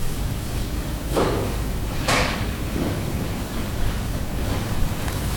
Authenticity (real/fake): fake